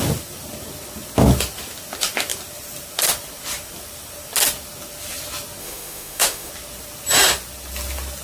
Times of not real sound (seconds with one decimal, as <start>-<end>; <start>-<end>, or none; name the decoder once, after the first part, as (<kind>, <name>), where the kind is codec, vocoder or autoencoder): 5.6-6.5 (autoencoder, DAC-VAE)